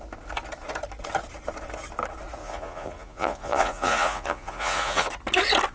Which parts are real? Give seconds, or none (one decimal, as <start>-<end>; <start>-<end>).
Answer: 0.0-2.4; 5.1-5.7